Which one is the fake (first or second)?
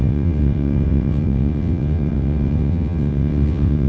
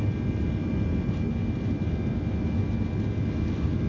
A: first